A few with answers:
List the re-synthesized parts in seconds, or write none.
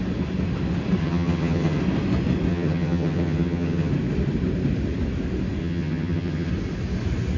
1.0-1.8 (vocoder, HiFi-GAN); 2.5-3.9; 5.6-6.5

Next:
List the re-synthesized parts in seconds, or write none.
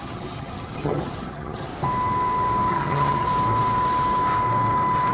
0.0-1.7 (vocoder, HiFi-GAN); 2.7-3.3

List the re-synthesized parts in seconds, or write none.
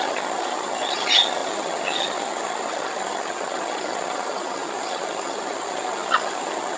0.0-6.8 (vocoder, HiFi-GAN)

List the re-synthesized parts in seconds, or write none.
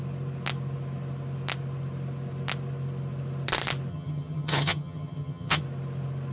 3.9-5.6 (vocoder, HiFi-GAN)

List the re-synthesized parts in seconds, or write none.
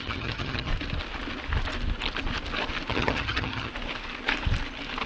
0.0-0.7 (vocoder, HiFi-GAN); 2.9-3.7